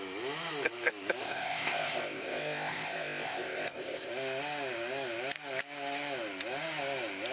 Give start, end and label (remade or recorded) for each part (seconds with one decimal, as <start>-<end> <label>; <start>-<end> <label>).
0.0-1.2 recorded; 1.2-4.1 remade; 4.1-7.3 recorded